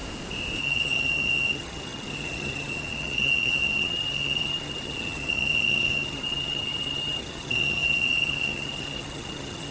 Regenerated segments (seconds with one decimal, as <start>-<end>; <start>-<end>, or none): 0.6-9.7